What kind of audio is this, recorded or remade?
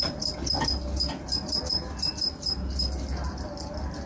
recorded